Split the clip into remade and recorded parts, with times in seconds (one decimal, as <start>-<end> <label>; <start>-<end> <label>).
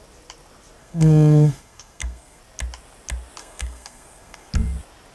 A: 0.0-0.8 recorded; 0.8-2.4 remade; 2.4-3.4 recorded; 3.4-4.5 remade; 4.5-5.1 recorded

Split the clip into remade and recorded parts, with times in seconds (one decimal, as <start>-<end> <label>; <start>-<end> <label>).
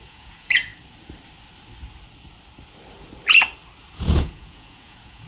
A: 0.0-0.7 remade; 0.7-3.9 recorded; 3.9-5.3 remade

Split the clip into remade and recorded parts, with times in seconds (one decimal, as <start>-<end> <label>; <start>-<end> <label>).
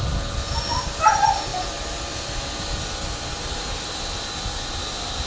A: 0.0-5.3 recorded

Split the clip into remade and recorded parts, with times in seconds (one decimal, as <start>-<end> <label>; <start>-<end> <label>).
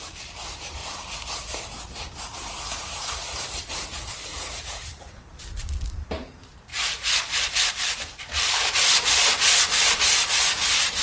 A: 0.0-11.0 remade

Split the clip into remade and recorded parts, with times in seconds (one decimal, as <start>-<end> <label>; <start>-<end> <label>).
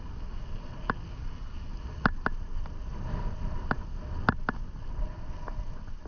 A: 0.0-2.9 recorded; 2.9-4.0 remade; 4.0-6.1 recorded